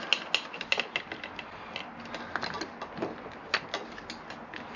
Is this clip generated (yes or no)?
no